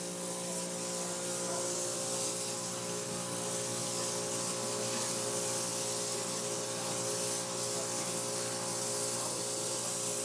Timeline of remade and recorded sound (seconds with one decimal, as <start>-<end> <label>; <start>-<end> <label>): 0.0-10.2 recorded